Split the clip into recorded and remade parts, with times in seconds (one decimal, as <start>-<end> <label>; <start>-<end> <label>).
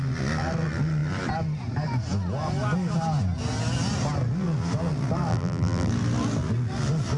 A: 0.0-5.3 recorded; 5.3-5.9 remade; 5.9-7.2 recorded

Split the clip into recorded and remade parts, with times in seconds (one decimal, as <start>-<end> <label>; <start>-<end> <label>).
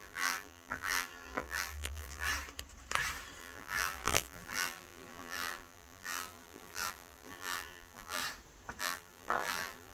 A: 0.0-2.3 remade; 2.3-3.4 recorded; 3.4-8.2 remade; 8.2-8.8 recorded; 8.8-9.9 remade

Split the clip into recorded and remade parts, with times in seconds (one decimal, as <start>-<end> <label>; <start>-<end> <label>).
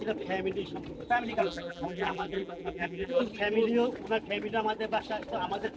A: 0.0-1.4 recorded; 1.4-3.2 remade; 3.2-5.8 recorded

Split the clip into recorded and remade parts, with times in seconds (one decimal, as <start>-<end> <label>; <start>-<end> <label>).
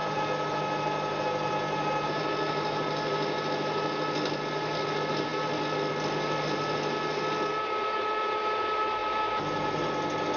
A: 0.0-10.4 recorded